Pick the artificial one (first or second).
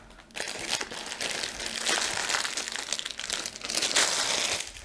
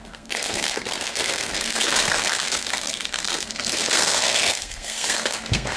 second